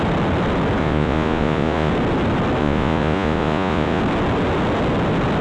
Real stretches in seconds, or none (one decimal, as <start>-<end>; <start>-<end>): 0.0-0.8; 1.9-2.6; 4.0-5.4